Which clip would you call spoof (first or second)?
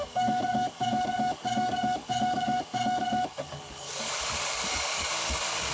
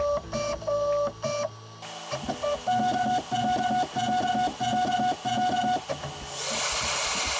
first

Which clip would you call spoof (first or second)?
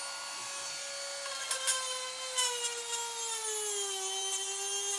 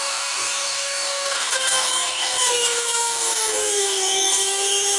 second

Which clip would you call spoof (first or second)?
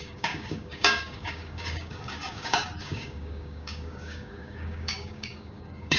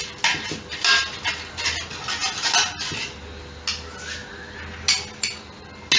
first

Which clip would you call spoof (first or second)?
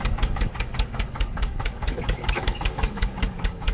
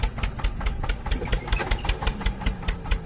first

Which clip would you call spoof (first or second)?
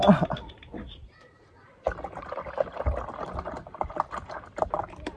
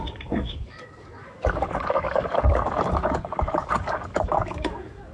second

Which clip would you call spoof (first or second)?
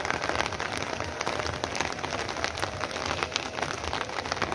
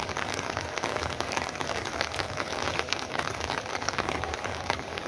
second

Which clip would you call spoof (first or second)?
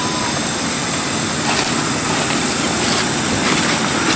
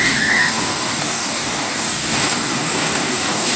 second